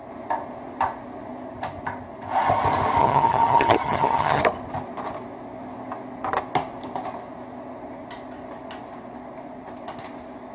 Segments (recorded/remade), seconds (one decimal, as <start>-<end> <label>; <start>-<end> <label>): 0.0-3.0 recorded; 3.0-4.4 remade; 4.4-10.5 recorded